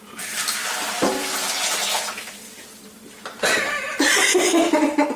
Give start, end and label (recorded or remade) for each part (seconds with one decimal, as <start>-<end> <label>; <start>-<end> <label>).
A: 0.0-3.9 recorded; 3.9-4.4 remade; 4.4-5.2 recorded